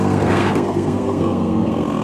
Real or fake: fake